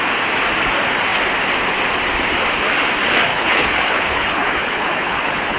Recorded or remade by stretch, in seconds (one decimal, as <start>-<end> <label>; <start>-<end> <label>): 0.0-3.3 recorded; 3.3-5.6 remade